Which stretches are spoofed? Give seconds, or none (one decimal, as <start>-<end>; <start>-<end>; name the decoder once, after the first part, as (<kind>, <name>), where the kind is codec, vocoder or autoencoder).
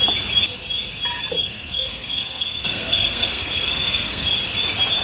1.4-4.3 (codec, SNAC)